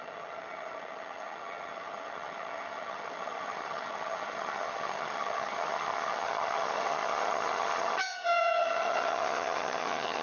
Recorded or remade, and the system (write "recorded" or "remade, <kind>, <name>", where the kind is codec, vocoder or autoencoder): remade, vocoder, HiFi-GAN